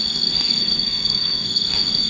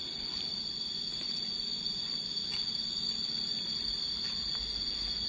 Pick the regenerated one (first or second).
first